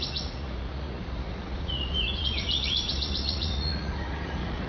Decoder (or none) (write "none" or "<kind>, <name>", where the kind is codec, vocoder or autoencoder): vocoder, Vocos